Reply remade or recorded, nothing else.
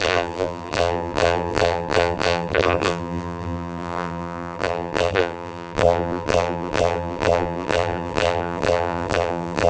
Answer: remade